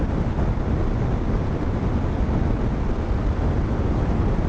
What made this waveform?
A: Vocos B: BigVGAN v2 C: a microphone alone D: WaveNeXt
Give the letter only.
C